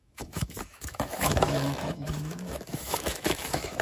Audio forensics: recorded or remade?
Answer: remade